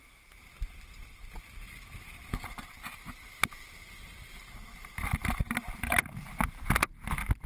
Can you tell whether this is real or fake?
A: real